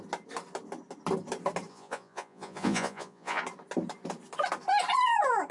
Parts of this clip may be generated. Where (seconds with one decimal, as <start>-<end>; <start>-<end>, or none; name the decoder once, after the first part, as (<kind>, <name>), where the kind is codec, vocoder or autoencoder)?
1.7-3.4 (vocoder, Vocos)